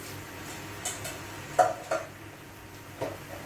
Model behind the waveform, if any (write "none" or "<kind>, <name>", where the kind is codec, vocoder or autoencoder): none